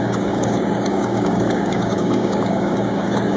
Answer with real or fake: fake